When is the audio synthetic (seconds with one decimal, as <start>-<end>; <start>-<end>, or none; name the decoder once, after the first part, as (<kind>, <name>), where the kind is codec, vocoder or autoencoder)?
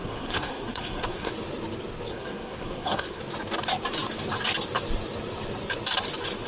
0.0-1.3 (codec, SNAC); 2.1-3.2